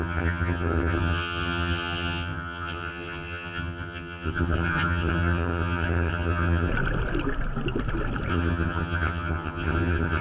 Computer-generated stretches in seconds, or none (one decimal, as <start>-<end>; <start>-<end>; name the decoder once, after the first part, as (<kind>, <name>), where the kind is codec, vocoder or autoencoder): 0.0-6.7 (vocoder, HiFi-GAN); 8.3-10.2